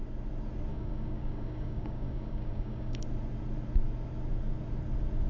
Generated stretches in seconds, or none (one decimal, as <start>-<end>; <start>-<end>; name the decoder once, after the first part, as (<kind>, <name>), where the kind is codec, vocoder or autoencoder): 0.7-3.0 (codec, DAC)